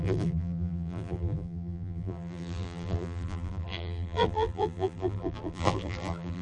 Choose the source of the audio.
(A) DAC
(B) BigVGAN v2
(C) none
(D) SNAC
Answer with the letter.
B